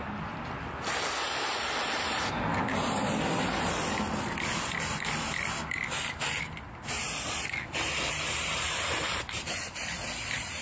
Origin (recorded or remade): recorded